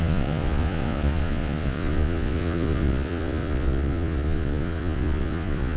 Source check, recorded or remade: remade